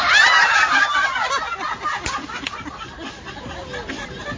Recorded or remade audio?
recorded